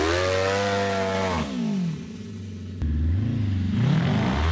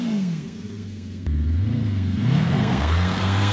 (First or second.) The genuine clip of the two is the first